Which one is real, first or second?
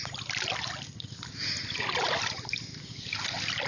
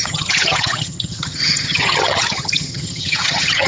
first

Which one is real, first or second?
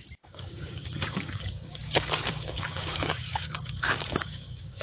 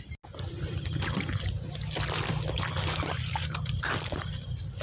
second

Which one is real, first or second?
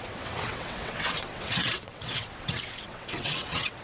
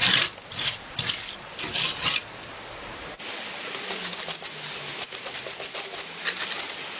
second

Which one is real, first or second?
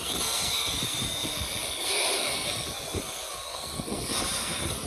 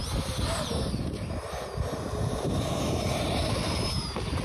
second